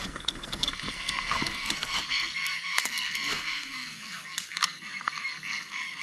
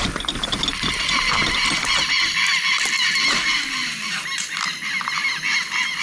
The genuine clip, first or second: second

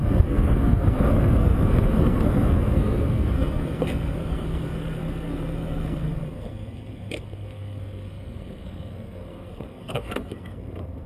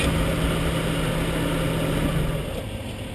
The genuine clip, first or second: second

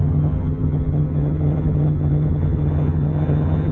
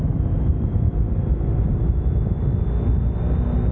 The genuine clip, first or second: second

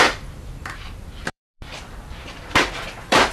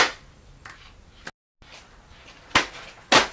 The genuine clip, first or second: second